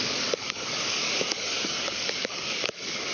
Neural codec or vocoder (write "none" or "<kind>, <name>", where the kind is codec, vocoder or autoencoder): codec, DAC